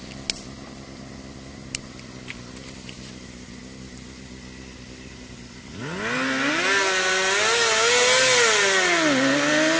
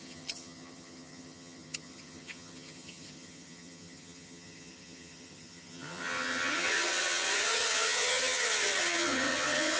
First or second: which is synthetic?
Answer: second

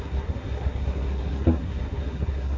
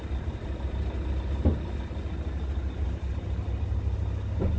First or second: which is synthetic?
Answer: first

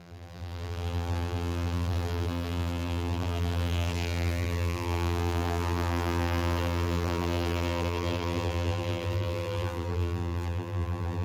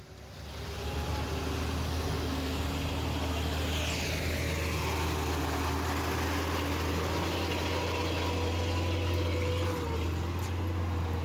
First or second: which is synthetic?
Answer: first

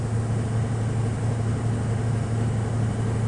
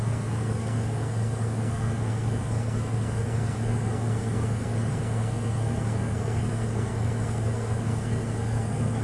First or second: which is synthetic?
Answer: second